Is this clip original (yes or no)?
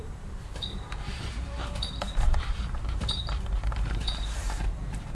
no